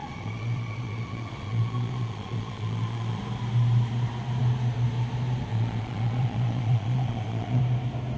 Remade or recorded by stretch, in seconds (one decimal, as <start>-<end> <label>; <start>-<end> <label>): 0.0-3.2 remade; 3.2-5.5 recorded; 5.5-7.6 remade; 7.6-8.2 recorded